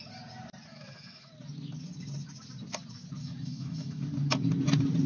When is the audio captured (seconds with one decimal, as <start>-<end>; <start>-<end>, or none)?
0.0-0.7; 1.3-3.2; 4.0-5.1

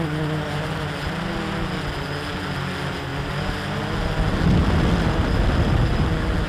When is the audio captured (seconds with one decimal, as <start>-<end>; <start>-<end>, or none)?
0.0-6.5